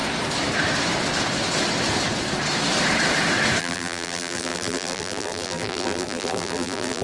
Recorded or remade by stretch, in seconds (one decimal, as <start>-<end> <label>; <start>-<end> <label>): 0.0-3.6 recorded; 3.6-7.0 remade